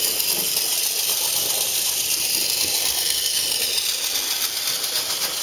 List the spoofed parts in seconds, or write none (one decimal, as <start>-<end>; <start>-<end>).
0.7-3.9

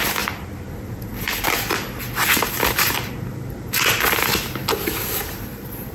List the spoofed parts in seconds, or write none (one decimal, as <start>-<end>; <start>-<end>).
none

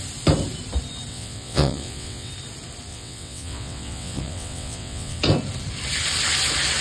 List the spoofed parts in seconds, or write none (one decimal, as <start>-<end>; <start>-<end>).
1.1-2.3; 2.9-5.2

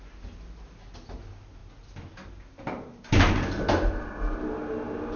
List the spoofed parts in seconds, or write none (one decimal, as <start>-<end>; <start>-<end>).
none